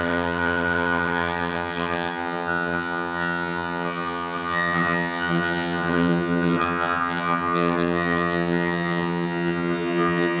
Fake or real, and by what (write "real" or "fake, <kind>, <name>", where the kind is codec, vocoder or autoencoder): fake, vocoder, HiFi-GAN